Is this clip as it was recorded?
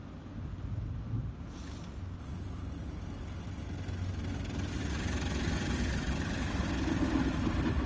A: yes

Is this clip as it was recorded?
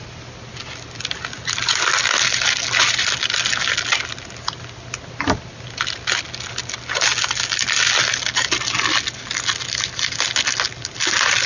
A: yes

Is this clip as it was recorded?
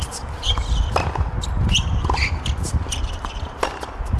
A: yes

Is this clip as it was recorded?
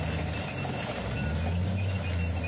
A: yes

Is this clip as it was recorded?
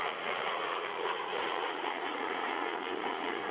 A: no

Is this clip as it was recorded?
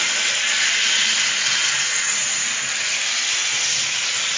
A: yes